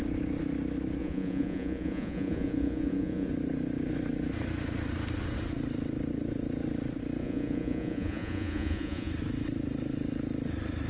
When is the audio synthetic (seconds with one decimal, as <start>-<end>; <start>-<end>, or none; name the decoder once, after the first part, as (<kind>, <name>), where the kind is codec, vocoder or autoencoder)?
1.0-3.3 (vocoder, Vocos); 7.2-9.1

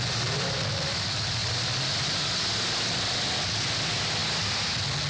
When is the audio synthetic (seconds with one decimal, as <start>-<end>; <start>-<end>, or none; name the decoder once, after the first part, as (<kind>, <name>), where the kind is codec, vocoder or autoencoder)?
0.0-1.4 (vocoder, BigVGAN v2); 3.7-4.2

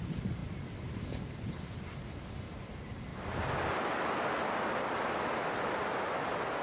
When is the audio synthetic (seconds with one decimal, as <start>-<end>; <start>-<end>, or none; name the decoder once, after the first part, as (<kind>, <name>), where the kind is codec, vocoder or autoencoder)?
0.0-0.4 (vocoder, BigVGAN v2); 1.3-3.1